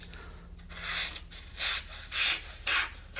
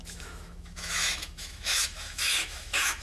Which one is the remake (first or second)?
second